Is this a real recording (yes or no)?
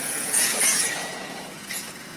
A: no